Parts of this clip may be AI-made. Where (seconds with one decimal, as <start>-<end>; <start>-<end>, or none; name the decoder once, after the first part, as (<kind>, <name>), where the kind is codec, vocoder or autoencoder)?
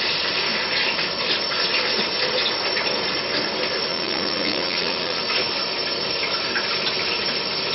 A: 3.9-5.2 (vocoder, Vocos)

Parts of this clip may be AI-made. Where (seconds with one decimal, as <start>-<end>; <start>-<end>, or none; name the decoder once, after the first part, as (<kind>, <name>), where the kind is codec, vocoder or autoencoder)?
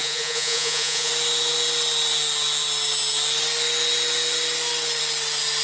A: 0.0-1.1 (vocoder, Vocos)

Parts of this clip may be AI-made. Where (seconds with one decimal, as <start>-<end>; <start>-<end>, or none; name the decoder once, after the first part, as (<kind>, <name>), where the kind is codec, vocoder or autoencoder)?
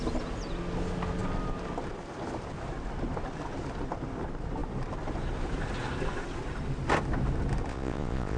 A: 7.7-8.4 (vocoder, Vocos)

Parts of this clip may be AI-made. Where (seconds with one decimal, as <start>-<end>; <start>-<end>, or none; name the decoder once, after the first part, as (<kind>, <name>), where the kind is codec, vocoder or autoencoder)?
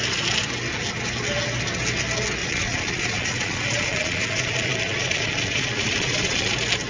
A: 2.4-6.5 (vocoder, Vocos)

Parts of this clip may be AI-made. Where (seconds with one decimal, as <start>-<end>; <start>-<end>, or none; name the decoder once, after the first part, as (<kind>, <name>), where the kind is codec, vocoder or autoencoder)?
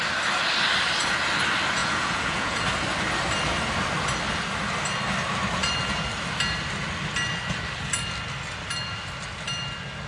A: 1.8-2.6 (vocoder, Vocos)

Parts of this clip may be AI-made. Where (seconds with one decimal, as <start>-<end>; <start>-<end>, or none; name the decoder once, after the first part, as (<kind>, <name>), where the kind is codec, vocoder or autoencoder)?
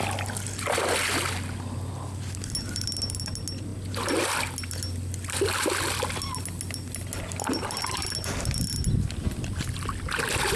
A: none